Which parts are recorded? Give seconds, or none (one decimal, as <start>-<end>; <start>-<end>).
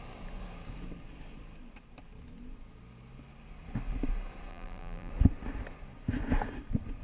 0.0-4.5; 5.1-7.0